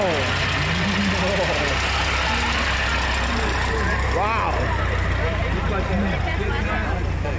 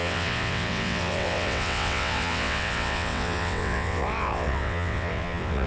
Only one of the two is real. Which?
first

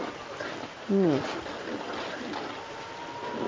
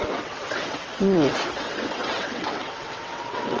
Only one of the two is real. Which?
first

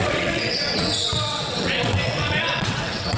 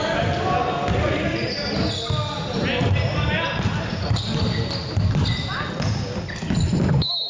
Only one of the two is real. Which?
second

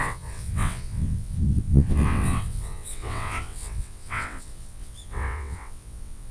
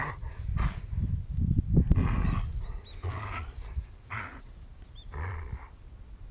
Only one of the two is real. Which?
second